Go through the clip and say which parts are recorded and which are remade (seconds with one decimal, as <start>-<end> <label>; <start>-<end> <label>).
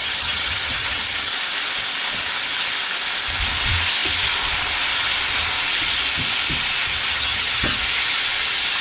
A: 0.0-1.3 remade; 1.3-7.1 recorded; 7.1-7.8 remade; 7.8-8.8 recorded